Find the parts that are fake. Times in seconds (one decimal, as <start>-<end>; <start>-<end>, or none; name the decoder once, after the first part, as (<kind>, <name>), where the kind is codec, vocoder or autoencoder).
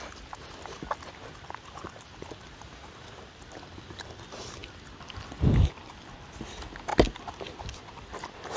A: 4.6-5.3 (vocoder, BigVGAN v2); 6.9-7.6